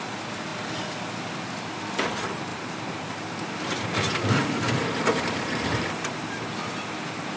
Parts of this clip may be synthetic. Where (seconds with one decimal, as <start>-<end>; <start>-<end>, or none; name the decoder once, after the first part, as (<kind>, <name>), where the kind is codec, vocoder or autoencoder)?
2.5-6.5 (vocoder, BigVGAN v2)